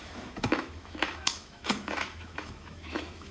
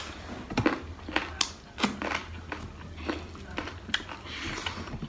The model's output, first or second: first